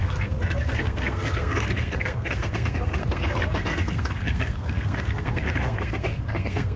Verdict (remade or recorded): remade